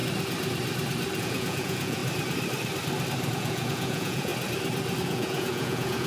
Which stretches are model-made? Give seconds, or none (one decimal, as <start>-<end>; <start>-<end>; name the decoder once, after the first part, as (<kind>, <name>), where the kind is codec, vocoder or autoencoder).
1.2-2.0 (vocoder, Vocos); 3.3-4.3; 5.0-6.1